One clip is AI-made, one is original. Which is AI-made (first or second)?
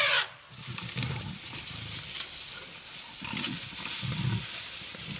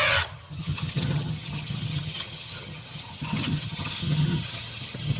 second